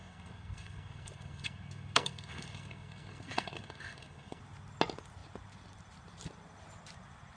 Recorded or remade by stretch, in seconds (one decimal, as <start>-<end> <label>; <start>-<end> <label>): 0.0-4.4 remade; 4.4-7.4 recorded